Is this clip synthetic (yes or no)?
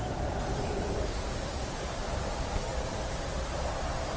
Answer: no